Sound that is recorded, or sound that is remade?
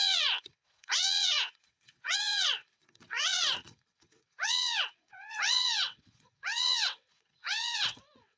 remade